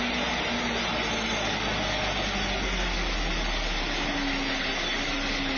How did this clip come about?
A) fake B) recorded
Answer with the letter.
B